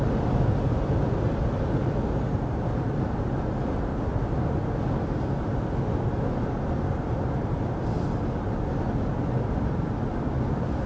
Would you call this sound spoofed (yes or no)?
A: no